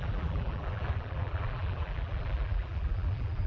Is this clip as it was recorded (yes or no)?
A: no